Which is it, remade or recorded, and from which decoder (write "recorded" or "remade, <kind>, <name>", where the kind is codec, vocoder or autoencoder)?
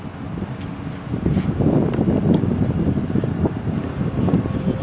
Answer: recorded